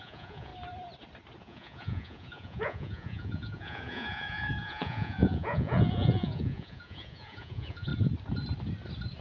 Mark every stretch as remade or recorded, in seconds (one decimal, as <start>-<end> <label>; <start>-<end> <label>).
0.0-0.5 remade; 0.5-1.4 recorded; 1.4-7.9 remade; 7.9-9.2 recorded